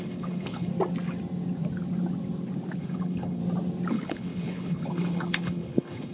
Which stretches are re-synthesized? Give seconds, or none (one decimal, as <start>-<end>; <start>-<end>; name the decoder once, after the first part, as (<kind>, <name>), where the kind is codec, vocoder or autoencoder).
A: 0.0-0.7 (codec, HILCodec); 2.8-3.4; 3.9-6.1